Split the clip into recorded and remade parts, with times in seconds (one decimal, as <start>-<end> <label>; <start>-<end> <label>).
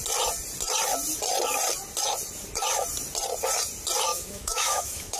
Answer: 0.0-4.1 recorded; 4.1-5.2 remade